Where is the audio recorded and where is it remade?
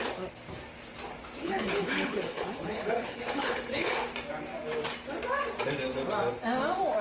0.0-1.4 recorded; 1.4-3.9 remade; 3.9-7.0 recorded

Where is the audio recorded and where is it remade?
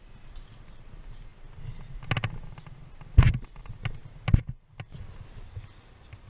0.0-6.3 recorded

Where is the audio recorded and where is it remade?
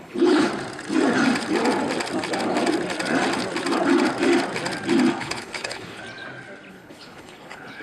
0.0-0.5 remade; 0.5-5.2 recorded; 5.2-6.0 remade; 6.0-6.7 recorded; 6.7-7.8 remade